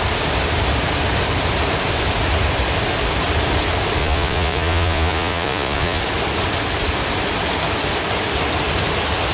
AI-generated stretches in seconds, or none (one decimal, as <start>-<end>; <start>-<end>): 4.0-6.0

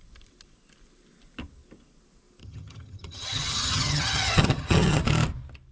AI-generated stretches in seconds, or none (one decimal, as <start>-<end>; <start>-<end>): 2.4-5.0

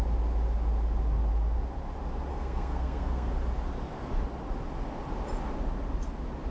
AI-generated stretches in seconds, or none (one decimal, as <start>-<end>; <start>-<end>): 2.3-3.3

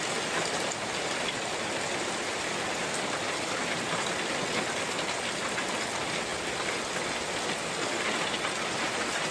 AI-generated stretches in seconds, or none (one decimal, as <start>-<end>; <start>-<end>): none